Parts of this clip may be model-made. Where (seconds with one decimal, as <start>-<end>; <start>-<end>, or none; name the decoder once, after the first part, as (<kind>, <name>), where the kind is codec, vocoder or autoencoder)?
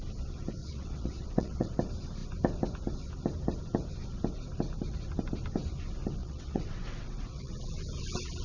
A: 0.6-1.7 (vocoder, WaveNeXt); 6.2-7.5